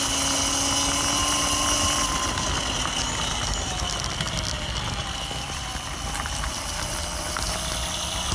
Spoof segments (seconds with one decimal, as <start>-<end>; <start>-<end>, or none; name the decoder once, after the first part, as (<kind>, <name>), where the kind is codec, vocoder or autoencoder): 5.0-7.2 (vocoder, BigVGAN v2)